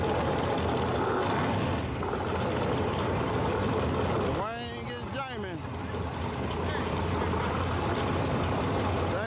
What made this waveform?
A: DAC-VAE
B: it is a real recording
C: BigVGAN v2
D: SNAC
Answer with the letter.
B